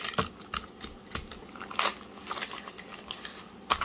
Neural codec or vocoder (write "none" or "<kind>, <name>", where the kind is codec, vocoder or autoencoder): none